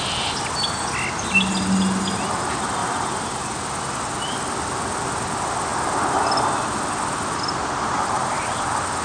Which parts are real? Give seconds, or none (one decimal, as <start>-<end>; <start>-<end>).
0.0-9.0